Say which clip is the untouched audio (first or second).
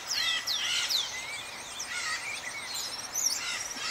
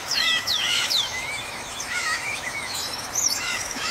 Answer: first